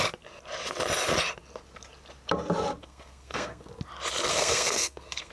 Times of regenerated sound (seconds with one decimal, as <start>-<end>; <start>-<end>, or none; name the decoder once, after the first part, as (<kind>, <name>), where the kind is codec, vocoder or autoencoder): 2.8-3.7 (codec, SNAC); 4.3-5.3